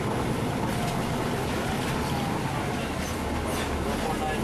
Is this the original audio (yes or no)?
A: yes